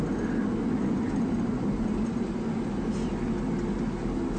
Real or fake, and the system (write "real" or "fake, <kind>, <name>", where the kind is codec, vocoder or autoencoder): real